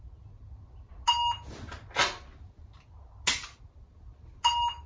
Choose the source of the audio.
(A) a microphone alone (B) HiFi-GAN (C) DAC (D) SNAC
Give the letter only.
A